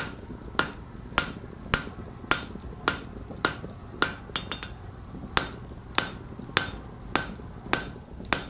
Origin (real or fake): real